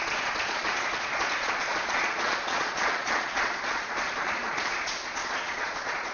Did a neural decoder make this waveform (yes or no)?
yes